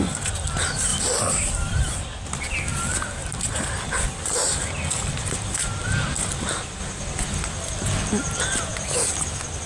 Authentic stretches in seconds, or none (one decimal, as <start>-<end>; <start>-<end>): 0.0-0.9; 1.8-9.7